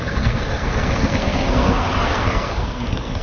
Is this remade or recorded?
remade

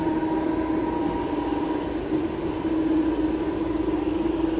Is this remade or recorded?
recorded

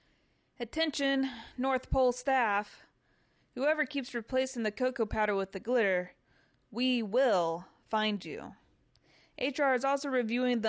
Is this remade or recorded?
recorded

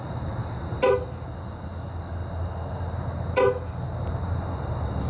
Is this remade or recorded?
recorded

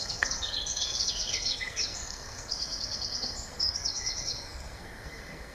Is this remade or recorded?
remade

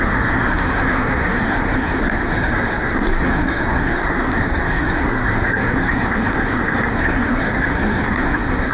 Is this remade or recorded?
remade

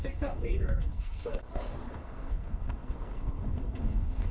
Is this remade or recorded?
remade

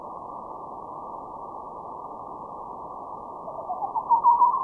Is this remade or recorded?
recorded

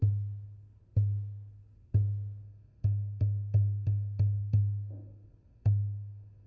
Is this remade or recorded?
remade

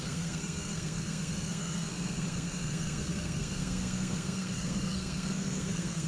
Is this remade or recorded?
remade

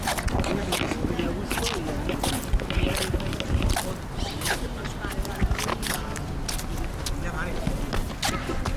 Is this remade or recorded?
recorded